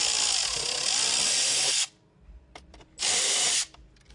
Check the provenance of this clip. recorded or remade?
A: remade